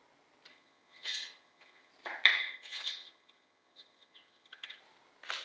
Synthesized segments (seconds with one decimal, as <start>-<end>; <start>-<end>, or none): 0.5-1.9; 2.3-4.8